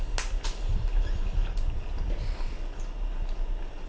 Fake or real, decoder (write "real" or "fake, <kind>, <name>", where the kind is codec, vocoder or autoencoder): real